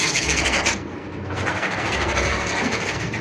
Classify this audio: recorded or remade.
remade